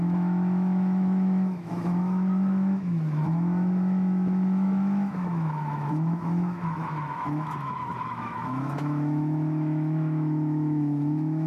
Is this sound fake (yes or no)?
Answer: yes